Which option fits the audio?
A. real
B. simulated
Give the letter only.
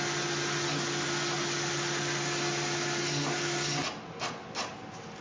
A